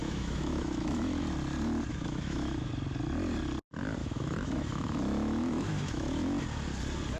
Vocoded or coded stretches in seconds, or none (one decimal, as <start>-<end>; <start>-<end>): 0.0-1.2; 1.9-2.7; 4.0-6.4